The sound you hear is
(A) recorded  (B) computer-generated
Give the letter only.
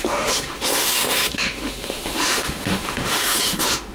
B